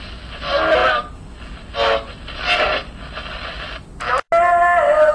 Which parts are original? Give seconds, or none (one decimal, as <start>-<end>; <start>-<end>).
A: 0.0-5.1